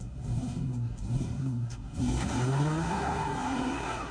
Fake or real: fake